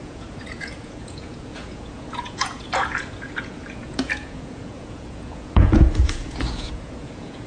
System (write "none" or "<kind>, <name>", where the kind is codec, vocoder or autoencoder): vocoder, Vocos